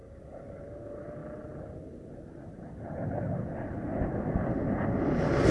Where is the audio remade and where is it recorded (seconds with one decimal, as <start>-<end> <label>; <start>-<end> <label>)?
0.0-0.5 remade; 0.5-5.5 recorded